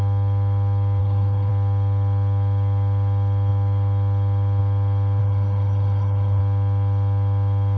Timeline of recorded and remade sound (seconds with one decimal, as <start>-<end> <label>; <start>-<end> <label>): 0.0-1.0 recorded; 1.0-1.5 remade; 1.5-5.2 recorded; 5.2-6.4 remade; 6.4-7.8 recorded